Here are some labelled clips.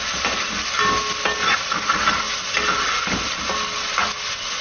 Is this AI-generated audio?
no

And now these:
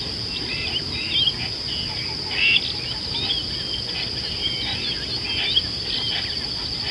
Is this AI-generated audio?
no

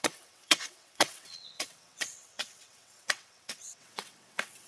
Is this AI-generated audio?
yes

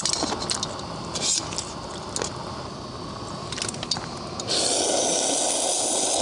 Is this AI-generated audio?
no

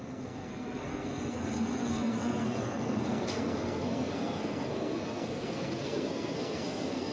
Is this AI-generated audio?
yes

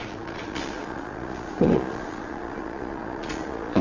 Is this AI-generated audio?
yes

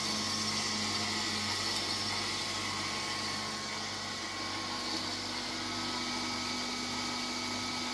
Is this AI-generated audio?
no